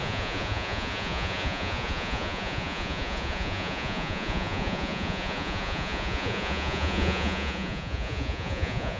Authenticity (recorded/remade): remade